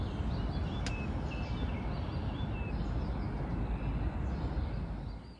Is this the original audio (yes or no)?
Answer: yes